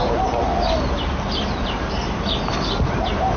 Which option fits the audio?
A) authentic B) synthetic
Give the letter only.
A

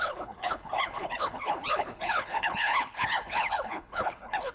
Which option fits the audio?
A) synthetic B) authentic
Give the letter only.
A